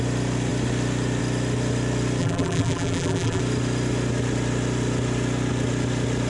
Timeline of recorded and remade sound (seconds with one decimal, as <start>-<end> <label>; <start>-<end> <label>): 0.0-2.2 recorded; 2.2-3.4 remade; 3.4-6.3 recorded